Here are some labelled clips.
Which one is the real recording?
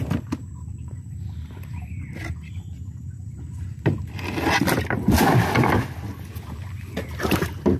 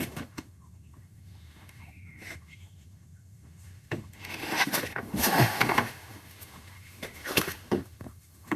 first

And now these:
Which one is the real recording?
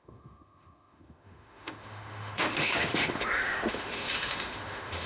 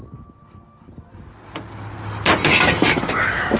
second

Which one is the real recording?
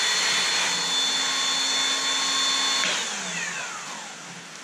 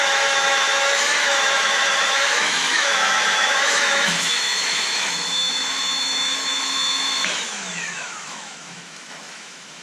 first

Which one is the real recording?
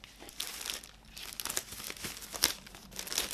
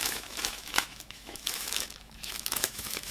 first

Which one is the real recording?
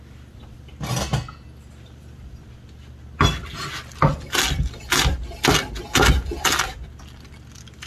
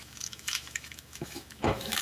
first